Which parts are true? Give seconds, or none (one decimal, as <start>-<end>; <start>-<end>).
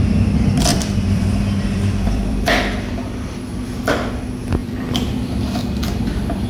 0.0-0.7; 2.9-4.6; 5.4-6.5